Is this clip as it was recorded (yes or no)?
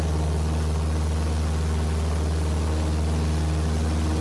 yes